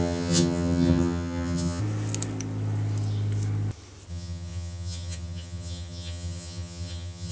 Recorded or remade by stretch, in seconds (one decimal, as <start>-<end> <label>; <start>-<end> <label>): 0.0-1.8 remade; 1.8-4.1 recorded; 4.1-7.3 remade

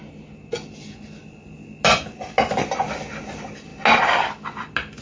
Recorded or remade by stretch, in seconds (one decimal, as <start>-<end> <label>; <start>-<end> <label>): 0.0-5.0 recorded

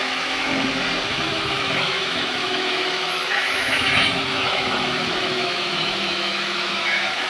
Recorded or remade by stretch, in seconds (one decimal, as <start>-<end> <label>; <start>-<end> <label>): 0.0-0.5 remade; 0.5-1.1 recorded; 1.1-7.3 remade

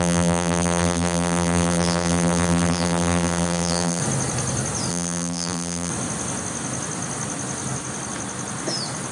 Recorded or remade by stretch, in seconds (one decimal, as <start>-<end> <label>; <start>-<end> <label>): 0.0-4.0 remade; 4.0-4.9 recorded; 4.9-5.9 remade; 5.9-9.1 recorded

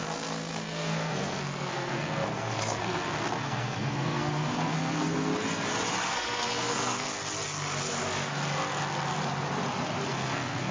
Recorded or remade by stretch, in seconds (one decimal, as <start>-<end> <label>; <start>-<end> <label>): 0.0-5.3 remade; 5.3-6.1 recorded; 6.1-7.1 remade; 7.1-10.1 recorded; 10.1-10.7 remade

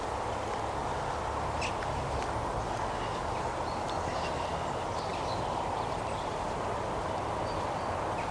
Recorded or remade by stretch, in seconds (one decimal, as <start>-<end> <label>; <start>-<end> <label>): 0.0-8.3 recorded

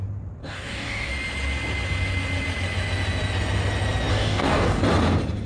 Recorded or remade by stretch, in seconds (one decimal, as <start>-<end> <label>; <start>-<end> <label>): 0.0-0.4 recorded; 0.4-1.1 remade; 1.1-4.1 recorded; 4.1-4.8 remade; 4.8-5.5 recorded

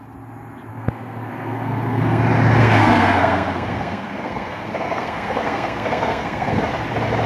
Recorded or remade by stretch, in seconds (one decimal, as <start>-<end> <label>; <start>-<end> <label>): 0.0-0.7 recorded; 0.7-2.2 remade; 2.2-2.6 recorded; 2.6-6.6 remade; 6.6-7.3 recorded